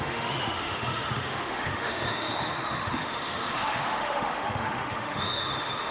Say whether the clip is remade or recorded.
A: remade